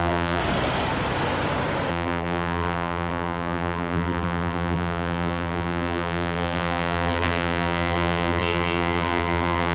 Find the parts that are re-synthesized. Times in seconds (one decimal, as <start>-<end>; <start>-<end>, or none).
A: 0.0-0.4; 1.9-9.7